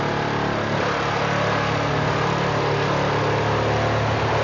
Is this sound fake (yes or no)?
no